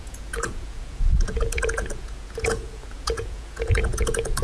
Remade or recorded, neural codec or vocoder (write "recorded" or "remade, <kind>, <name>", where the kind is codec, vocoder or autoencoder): remade, vocoder, Vocos